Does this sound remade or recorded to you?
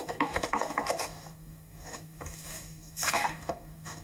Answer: remade